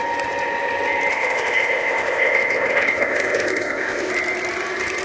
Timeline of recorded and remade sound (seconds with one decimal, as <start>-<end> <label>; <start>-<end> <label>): 0.0-1.1 recorded; 1.1-4.1 remade; 4.1-5.0 recorded